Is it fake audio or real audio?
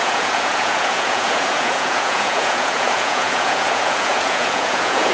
fake